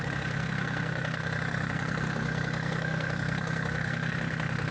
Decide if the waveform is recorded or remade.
remade